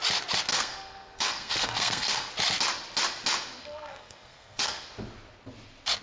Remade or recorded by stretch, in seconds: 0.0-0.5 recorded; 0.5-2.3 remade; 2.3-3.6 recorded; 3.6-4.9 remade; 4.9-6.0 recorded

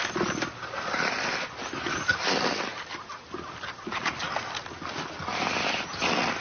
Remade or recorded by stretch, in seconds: 0.0-6.4 recorded

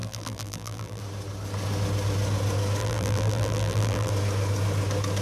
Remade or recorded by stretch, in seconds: 0.0-1.0 remade; 1.0-2.8 recorded; 2.8-4.1 remade; 4.1-5.2 recorded

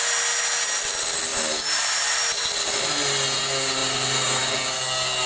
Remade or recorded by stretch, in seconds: 0.0-5.3 recorded

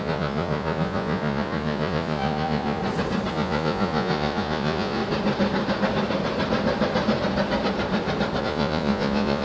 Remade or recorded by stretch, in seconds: 0.0-2.8 remade; 2.8-3.3 recorded; 3.3-5.0 remade; 5.0-8.4 recorded; 8.4-9.4 remade